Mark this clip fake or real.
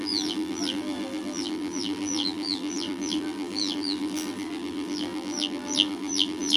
fake